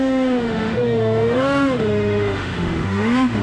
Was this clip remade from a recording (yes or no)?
yes